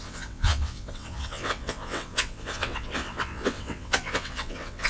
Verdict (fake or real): fake